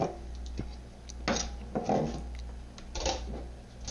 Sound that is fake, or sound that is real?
real